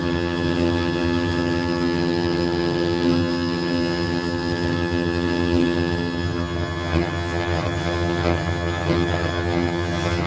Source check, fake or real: fake